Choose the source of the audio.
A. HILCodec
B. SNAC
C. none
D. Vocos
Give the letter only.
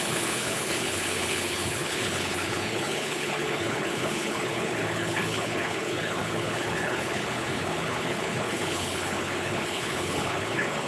A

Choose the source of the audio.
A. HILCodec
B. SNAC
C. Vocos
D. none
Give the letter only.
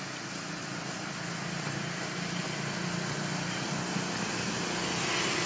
D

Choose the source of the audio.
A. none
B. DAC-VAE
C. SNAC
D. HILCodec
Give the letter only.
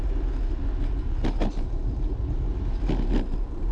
A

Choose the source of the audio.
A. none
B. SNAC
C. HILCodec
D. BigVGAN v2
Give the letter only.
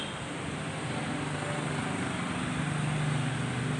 A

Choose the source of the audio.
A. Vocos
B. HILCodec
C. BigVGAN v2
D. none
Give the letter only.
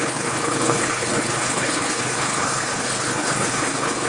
B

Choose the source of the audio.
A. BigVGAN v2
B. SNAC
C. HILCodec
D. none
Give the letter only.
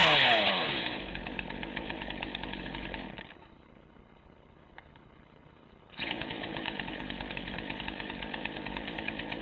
C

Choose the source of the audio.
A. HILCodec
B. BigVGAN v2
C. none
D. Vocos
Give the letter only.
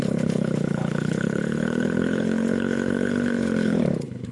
A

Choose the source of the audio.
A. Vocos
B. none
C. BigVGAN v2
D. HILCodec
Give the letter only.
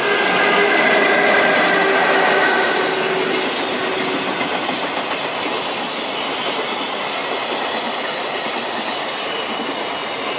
B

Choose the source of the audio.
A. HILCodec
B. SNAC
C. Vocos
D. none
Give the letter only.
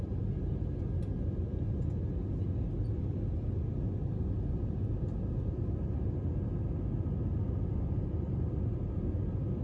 D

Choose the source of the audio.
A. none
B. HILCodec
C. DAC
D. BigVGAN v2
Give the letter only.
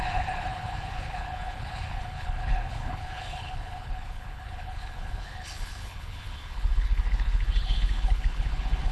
B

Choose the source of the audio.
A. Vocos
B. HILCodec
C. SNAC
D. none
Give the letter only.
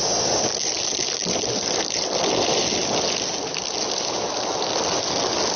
D